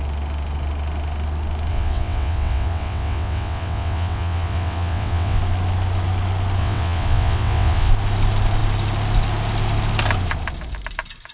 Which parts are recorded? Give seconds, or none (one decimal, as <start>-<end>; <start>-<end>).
0.0-1.7; 5.4-6.6; 7.9-11.3